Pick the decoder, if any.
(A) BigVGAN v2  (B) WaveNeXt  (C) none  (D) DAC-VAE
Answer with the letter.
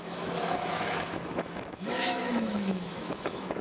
D